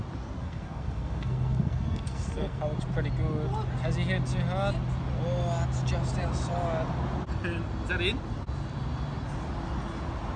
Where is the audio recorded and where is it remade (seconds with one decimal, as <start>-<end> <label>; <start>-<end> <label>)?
0.0-0.4 recorded; 0.4-2.6 remade; 2.6-10.4 recorded